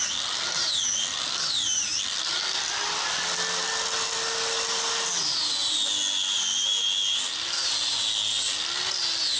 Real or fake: real